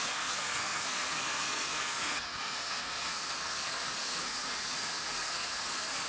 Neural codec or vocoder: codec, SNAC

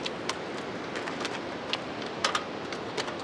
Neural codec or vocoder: none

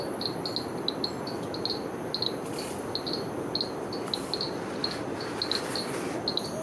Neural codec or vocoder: none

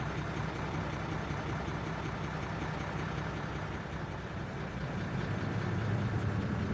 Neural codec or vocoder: none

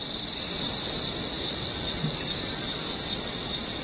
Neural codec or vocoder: vocoder, BigVGAN v2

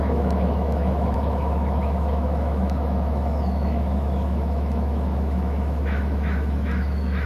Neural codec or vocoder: autoencoder, DAC-VAE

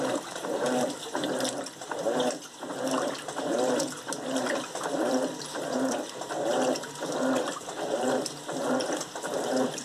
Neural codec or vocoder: vocoder, BigVGAN v2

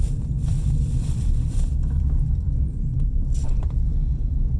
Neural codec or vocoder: vocoder, BigVGAN v2